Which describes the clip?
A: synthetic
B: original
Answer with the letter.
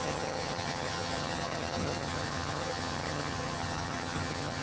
A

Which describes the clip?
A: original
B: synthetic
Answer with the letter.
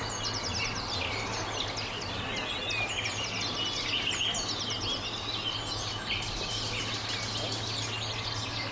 A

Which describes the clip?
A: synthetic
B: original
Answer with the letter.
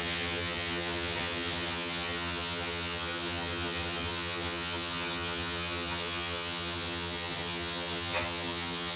A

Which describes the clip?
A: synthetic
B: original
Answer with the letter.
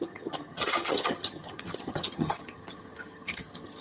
A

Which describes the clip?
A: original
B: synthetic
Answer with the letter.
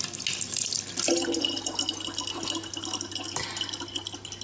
A